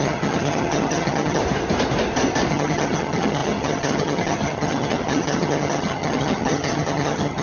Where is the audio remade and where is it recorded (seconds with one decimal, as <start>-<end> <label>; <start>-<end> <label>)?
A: 0.0-1.4 remade; 1.4-2.5 recorded; 2.5-7.4 remade